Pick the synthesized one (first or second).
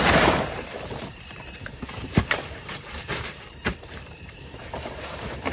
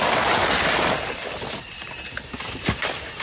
first